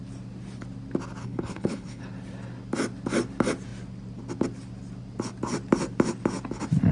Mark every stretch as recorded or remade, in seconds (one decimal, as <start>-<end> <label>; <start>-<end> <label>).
0.0-1.2 recorded; 1.2-2.0 remade; 2.0-6.9 recorded